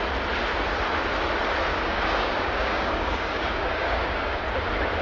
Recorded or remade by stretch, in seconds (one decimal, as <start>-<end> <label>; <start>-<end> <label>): 0.0-1.7 recorded; 1.7-4.4 remade; 4.4-5.0 recorded